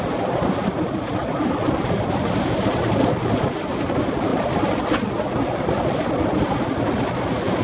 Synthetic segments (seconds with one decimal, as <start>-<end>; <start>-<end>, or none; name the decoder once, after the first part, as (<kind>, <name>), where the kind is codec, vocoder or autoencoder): none

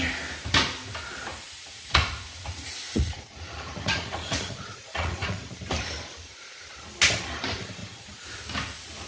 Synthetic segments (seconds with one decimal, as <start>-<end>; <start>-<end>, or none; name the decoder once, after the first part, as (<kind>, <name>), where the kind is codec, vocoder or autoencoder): 1.3-5.5 (vocoder, Vocos); 7.8-8.4

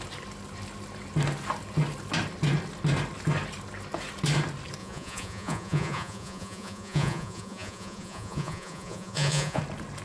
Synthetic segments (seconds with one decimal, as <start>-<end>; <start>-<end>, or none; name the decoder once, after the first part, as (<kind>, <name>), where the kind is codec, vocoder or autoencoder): 4.8-9.6 (vocoder, Vocos)

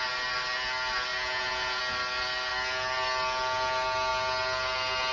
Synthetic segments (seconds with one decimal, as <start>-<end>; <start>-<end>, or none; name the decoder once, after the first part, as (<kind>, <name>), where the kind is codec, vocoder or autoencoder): 1.1-1.8 (vocoder, Vocos)

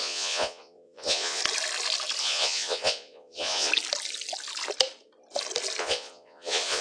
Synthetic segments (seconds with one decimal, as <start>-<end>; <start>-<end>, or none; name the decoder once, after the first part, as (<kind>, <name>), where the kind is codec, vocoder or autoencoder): 0.0-1.4 (vocoder, Vocos); 2.2-3.7; 5.8-6.8

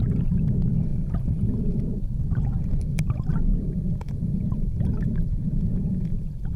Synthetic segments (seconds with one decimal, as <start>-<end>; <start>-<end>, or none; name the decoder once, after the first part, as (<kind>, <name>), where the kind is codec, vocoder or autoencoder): 0.9-1.5 (vocoder, Vocos); 3.5-6.6